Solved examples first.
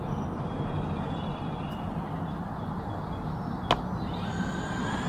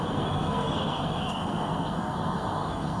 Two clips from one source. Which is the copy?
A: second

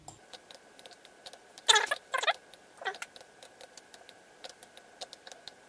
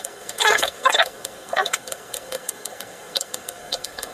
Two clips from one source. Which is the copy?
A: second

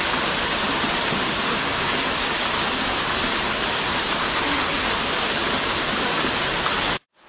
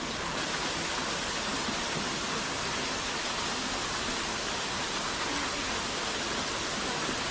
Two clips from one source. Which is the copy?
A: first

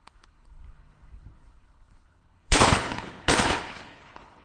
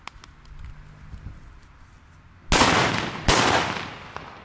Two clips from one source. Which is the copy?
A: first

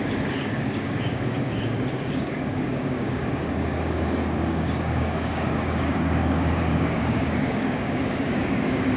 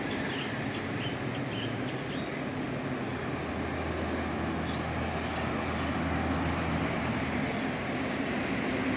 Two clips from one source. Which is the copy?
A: first